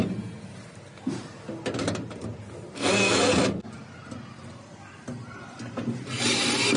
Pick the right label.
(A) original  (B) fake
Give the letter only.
A